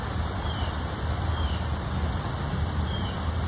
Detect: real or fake real